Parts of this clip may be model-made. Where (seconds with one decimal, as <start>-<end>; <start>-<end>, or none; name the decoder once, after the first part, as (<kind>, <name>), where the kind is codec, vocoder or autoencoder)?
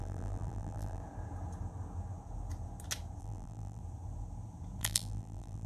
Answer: 0.0-1.0 (vocoder, BigVGAN v2); 3.2-3.8; 4.8-5.7